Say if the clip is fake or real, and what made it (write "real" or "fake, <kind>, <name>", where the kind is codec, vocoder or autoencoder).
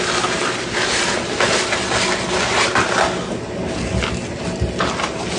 real